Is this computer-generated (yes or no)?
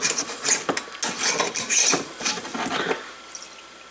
no